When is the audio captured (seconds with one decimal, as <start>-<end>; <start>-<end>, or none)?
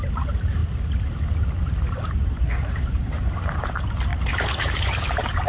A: 0.6-2.1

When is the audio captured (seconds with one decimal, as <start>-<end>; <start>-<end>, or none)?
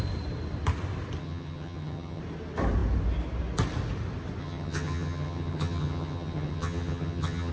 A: 0.0-1.2; 2.2-4.4